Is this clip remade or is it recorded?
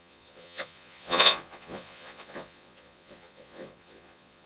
remade